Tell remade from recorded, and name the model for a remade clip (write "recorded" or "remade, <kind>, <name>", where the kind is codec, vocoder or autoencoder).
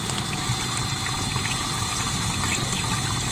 recorded